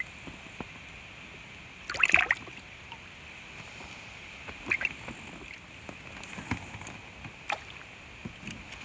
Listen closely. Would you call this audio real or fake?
real